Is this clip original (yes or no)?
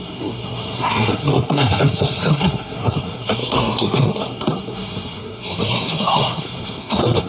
no